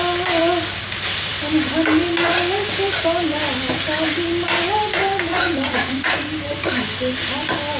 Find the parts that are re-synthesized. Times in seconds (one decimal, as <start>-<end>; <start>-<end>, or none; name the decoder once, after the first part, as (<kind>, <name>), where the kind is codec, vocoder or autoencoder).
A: 5.3-6.1 (vocoder, Vocos)